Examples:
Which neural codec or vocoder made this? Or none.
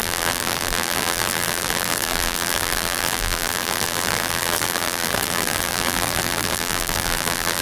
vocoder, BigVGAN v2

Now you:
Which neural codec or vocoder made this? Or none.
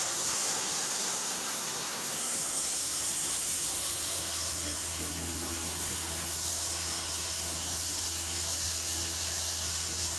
codec, SNAC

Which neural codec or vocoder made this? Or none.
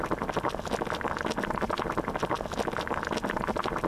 none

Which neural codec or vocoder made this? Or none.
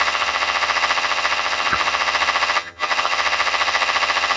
vocoder, HiFi-GAN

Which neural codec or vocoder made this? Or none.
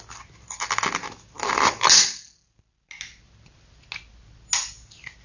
none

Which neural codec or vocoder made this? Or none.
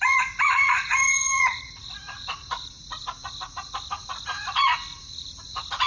vocoder, Vocos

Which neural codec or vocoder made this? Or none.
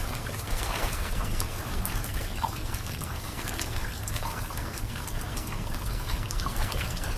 codec, SNAC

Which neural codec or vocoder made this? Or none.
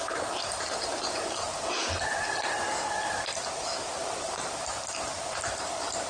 none